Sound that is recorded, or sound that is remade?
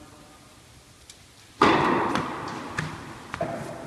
recorded